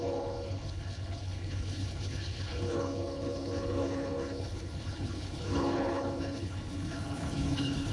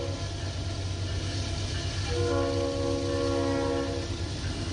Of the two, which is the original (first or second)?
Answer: second